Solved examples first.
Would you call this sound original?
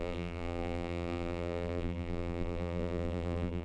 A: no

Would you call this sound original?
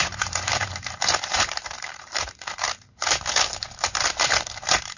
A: no